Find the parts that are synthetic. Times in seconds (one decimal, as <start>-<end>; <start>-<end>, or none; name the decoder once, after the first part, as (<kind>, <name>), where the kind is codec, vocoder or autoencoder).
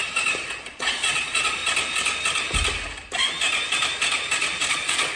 0.7-1.6 (vocoder, Vocos); 4.7-5.2